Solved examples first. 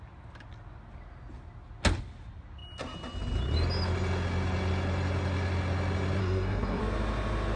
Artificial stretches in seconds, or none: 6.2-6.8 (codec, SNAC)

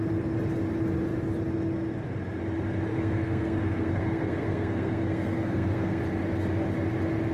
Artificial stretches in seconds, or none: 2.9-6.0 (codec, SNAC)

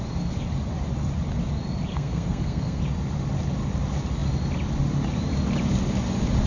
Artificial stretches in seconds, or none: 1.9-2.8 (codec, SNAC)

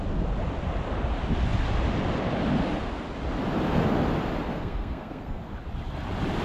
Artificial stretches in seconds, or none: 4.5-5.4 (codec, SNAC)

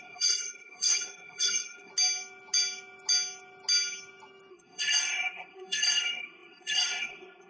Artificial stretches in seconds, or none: 0.0-1.9 (codec, SNAC); 4.5-7.5

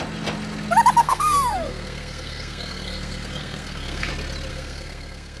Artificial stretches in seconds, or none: 1.0-4.1 (codec, SNAC); 4.5-5.4

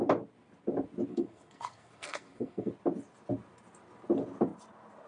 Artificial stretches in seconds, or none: 1.1-2.7 (codec, SNAC)